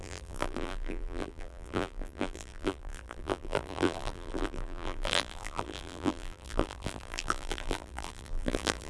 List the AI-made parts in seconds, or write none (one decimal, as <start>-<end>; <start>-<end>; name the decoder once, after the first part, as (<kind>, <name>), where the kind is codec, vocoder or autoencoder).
0.0-8.9 (vocoder, BigVGAN v2)